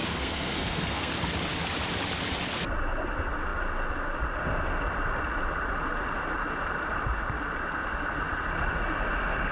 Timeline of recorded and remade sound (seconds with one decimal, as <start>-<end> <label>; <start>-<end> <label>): 0.0-1.1 remade; 1.1-9.5 recorded